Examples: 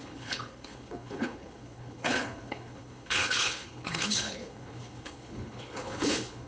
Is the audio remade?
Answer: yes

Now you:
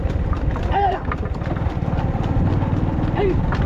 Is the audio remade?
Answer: no